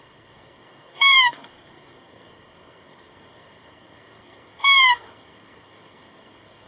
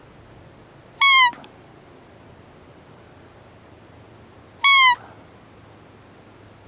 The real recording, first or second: second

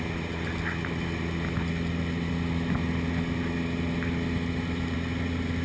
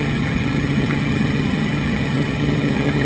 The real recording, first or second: first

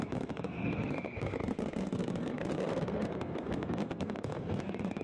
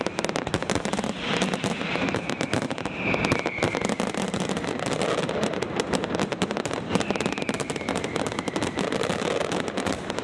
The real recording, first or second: second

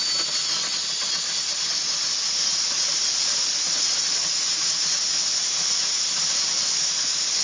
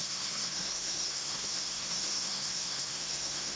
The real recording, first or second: first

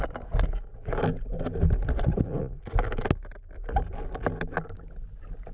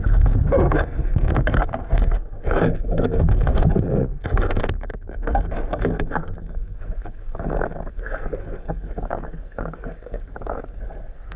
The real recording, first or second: first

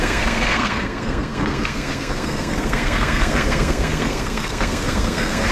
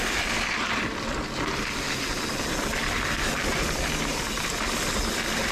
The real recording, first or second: second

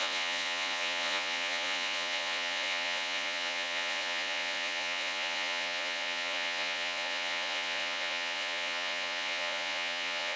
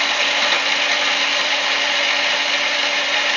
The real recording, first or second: second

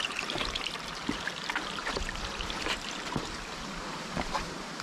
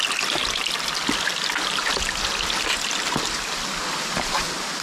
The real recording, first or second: second